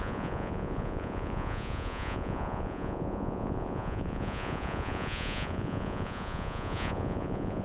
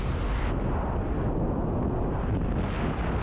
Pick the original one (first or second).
second